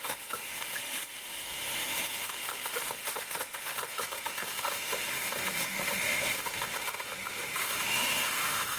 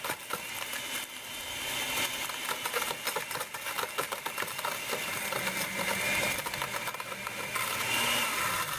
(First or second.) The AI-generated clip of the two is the first